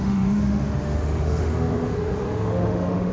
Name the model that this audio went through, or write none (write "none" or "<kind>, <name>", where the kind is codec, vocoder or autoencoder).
autoencoder, DAC-VAE